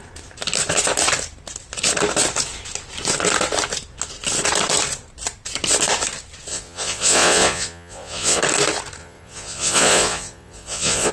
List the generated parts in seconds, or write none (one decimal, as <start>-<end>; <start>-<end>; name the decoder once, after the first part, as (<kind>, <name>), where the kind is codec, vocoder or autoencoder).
6.5-8.4 (vocoder, Vocos); 9.0-11.1